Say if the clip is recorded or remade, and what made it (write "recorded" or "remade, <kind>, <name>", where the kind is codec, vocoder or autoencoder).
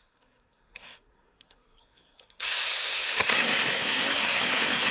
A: remade, codec, SNAC